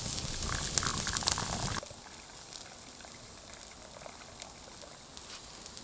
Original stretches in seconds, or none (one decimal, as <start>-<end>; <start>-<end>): 0.0-5.8